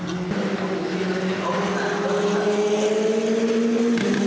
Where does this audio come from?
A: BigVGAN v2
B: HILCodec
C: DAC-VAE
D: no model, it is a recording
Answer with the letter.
D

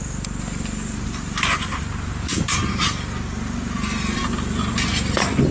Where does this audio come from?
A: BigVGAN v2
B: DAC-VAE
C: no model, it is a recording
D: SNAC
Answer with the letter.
C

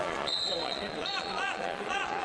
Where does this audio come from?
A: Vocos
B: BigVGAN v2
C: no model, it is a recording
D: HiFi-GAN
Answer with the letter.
A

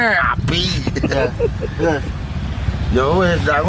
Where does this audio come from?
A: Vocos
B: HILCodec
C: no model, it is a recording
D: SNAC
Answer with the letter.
C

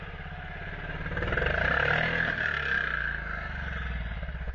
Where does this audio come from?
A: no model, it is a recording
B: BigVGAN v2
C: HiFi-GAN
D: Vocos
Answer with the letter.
A